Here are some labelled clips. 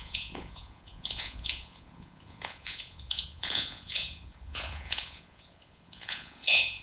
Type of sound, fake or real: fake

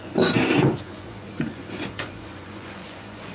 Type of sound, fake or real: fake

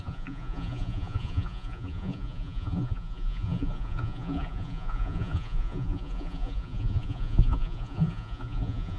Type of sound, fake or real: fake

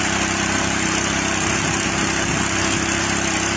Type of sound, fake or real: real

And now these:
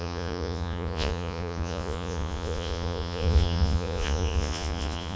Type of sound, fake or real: fake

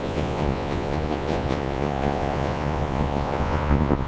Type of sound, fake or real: fake